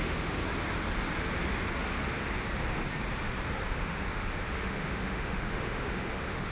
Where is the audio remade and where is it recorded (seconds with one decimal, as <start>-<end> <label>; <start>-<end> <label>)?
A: 0.0-0.4 remade; 0.4-3.7 recorded; 3.7-6.5 remade